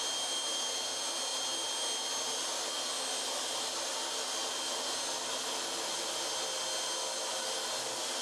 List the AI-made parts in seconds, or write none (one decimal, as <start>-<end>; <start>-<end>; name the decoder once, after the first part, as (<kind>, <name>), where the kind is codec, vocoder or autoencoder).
none